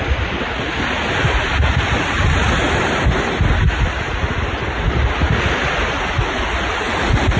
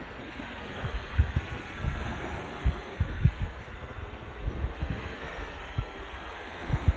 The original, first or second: first